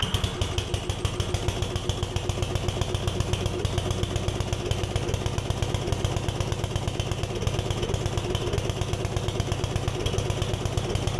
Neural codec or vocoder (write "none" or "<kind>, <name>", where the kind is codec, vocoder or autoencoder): none